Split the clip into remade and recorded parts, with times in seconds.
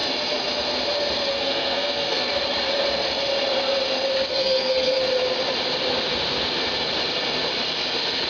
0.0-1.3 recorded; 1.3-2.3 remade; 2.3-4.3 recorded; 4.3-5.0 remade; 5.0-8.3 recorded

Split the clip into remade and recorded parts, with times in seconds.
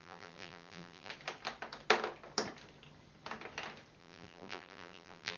0.0-1.1 remade; 1.1-4.0 recorded; 4.0-5.4 remade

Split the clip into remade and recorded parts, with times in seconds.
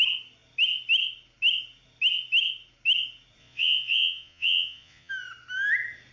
0.0-3.4 recorded; 3.4-5.1 remade; 5.1-6.1 recorded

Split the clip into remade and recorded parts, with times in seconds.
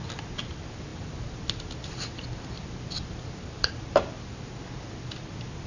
0.0-5.7 recorded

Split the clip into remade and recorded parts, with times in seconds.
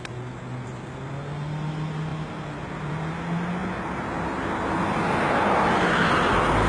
0.0-6.7 recorded